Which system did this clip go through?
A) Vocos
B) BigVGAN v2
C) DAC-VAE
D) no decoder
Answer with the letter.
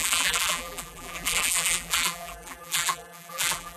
B